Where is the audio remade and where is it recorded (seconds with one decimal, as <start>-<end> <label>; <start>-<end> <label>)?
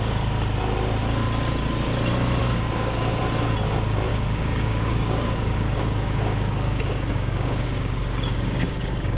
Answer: 0.0-2.4 recorded; 2.4-3.2 remade; 3.2-4.1 recorded; 4.1-9.2 remade